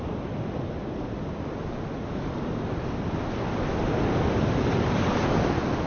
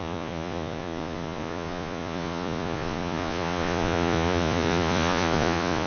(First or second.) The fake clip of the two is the second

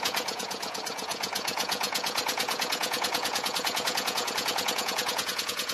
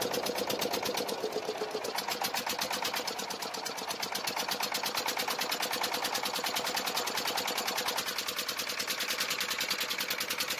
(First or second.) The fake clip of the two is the first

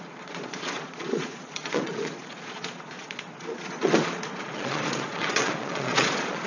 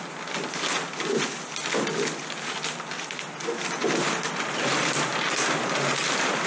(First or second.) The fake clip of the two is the first